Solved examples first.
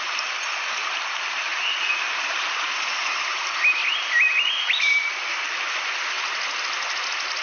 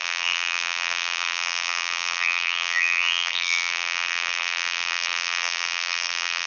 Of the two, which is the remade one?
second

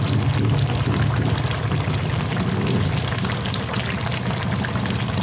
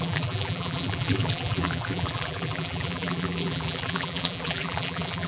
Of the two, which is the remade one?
second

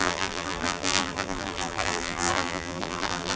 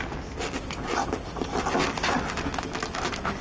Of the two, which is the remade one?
first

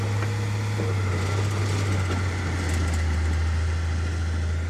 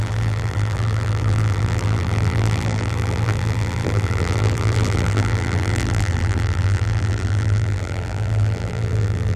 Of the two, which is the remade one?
second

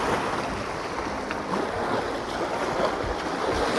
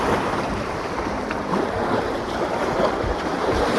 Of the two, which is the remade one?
second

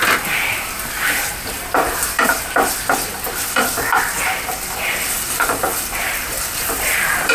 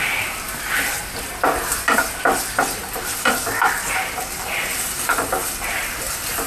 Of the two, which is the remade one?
first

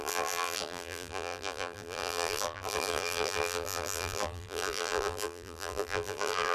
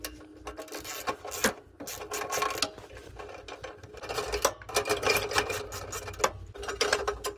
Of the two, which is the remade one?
first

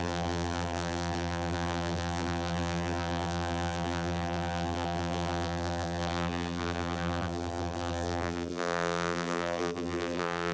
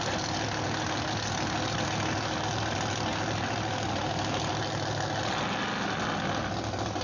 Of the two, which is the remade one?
first